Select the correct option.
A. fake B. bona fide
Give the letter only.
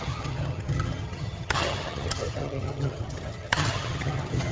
A